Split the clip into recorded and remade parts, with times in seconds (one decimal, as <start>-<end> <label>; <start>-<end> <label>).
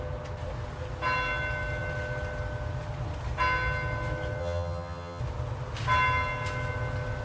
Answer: 0.0-4.4 recorded; 4.4-5.2 remade; 5.2-7.2 recorded